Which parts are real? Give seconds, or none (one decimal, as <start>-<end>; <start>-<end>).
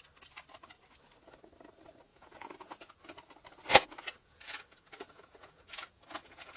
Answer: 0.0-2.1; 3.2-3.7